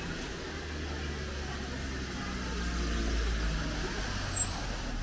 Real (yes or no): yes